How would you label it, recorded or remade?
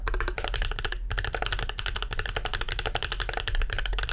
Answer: remade